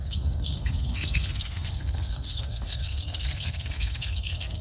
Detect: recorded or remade remade